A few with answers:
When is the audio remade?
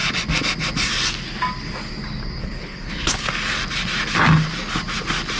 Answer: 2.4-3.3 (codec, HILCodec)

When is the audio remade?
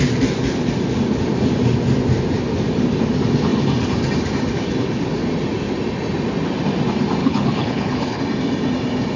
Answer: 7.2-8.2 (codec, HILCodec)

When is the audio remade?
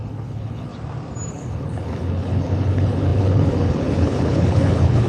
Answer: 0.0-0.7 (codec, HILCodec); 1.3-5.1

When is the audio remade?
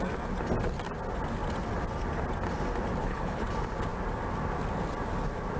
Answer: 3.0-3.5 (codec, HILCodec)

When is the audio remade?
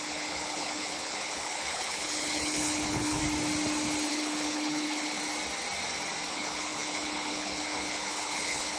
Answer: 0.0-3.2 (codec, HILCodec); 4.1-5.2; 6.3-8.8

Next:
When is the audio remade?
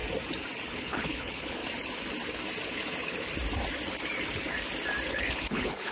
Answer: 0.7-1.6 (codec, HILCodec); 5.1-5.9